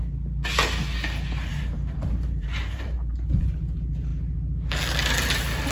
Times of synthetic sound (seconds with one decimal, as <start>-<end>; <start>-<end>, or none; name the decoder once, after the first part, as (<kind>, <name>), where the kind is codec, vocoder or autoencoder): 1.5-3.5 (vocoder, BigVGAN v2)